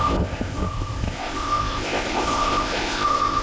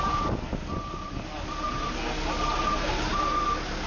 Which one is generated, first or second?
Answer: first